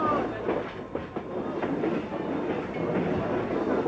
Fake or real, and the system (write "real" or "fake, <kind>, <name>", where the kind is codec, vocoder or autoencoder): real